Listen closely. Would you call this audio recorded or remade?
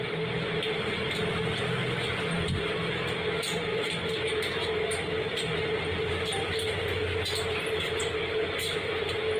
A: recorded